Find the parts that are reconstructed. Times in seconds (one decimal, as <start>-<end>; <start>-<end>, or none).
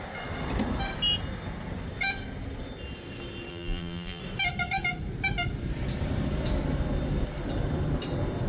3.5-4.2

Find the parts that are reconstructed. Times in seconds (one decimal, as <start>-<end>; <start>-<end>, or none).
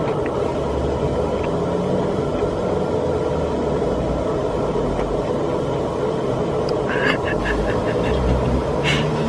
0.0-0.5; 3.8-9.3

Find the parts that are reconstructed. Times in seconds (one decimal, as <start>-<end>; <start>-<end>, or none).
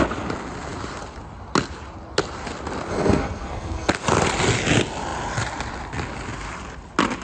2.9-3.9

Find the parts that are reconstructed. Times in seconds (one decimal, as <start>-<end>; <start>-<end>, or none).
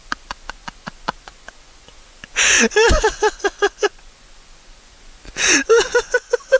0.0-6.6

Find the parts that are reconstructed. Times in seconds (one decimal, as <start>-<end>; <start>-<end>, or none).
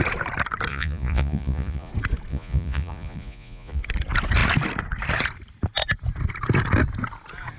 0.7-1.9; 2.3-3.8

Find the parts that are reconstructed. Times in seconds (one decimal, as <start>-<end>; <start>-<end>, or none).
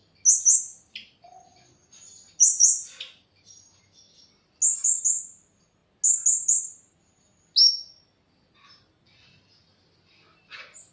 none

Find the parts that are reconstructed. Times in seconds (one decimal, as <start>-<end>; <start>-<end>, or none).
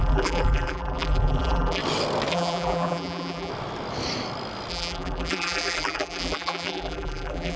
0.0-1.8; 2.3-3.5; 4.7-7.6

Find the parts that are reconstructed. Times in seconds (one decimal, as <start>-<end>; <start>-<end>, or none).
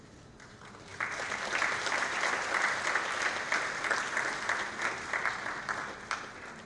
none